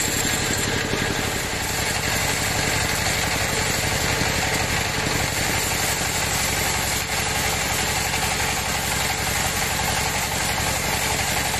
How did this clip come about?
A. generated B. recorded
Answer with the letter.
B